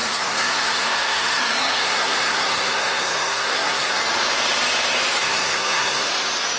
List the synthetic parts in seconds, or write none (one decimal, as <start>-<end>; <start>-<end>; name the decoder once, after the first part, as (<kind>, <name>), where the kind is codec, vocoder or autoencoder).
0.0-4.0 (codec, SNAC); 5.2-6.1